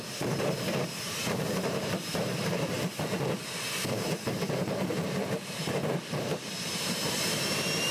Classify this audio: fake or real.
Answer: fake